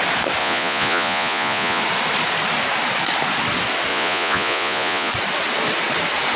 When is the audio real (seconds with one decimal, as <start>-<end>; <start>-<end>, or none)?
0.0-0.4; 1.8-3.9; 5.1-6.4